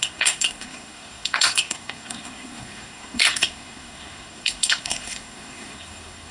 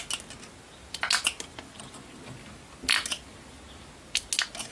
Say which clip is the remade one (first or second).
first